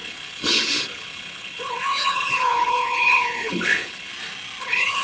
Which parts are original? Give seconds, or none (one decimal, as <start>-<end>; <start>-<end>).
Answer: 4.1-4.6